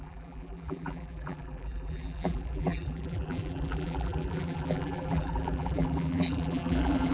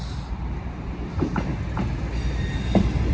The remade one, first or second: first